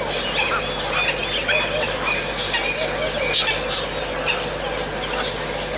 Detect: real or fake real